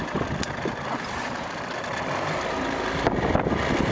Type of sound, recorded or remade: recorded